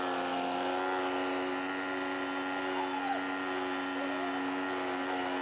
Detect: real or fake real